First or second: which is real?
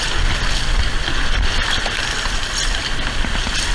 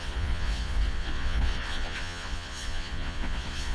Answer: first